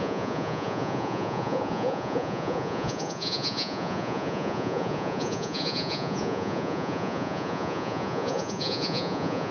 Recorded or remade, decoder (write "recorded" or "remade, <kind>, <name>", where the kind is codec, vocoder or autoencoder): remade, vocoder, Vocos